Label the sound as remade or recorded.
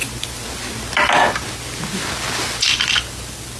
recorded